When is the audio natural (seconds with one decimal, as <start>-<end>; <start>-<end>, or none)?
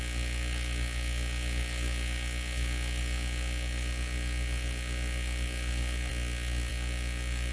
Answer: 0.0-7.5